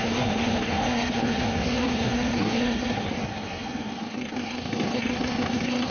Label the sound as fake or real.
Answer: fake